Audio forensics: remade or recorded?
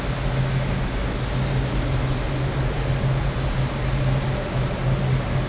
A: recorded